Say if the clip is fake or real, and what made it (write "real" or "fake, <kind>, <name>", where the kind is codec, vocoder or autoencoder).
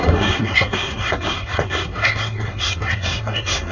fake, codec, SNAC